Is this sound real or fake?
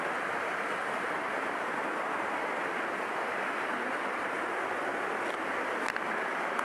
real